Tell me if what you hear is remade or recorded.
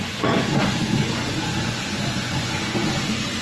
remade